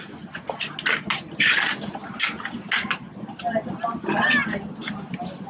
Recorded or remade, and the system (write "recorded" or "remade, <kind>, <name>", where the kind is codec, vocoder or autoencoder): recorded